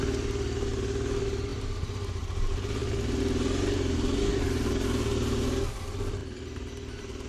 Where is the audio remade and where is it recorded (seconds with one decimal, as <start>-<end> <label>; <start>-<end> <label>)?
0.0-6.2 recorded; 6.2-7.3 remade